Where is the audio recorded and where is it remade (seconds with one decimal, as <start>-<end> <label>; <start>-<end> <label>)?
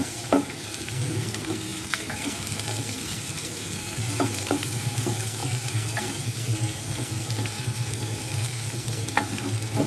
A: 0.0-9.9 remade